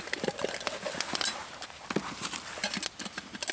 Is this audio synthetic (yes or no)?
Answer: no